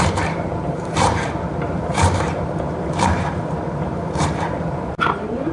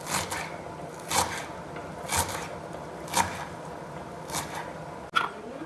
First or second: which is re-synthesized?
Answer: first